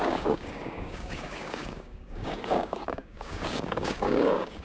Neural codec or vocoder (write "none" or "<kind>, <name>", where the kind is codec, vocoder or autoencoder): codec, DAC